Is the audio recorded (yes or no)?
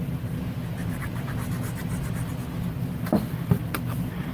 yes